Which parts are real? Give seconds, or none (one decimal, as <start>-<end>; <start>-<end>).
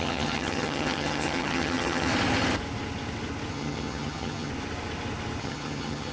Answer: 2.1-3.5; 4.5-5.4